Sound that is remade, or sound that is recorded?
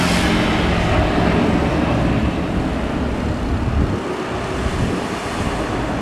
recorded